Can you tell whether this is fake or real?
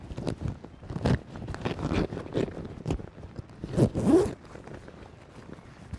real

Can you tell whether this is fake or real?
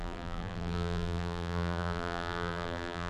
fake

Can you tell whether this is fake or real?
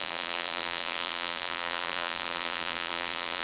fake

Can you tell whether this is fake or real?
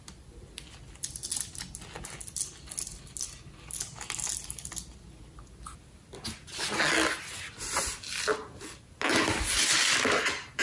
real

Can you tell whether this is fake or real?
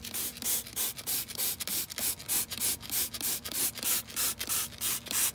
fake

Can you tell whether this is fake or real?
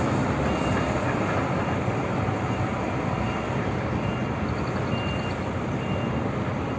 real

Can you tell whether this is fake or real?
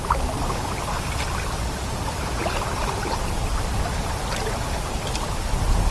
real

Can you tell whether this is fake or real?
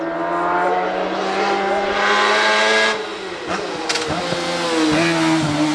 real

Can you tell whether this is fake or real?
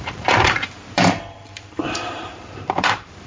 fake